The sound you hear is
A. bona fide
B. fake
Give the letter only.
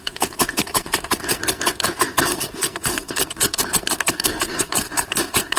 B